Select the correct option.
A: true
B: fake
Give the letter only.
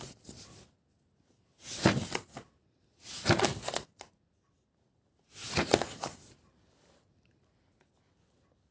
A